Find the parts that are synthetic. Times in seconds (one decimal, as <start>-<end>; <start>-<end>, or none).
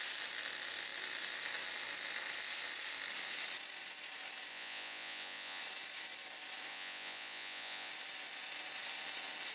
4.5-5.6; 6.7-7.9